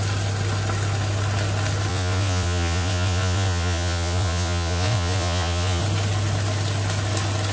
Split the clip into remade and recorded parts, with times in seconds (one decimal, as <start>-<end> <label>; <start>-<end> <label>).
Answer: 0.0-1.9 recorded; 1.9-5.8 remade; 5.8-7.5 recorded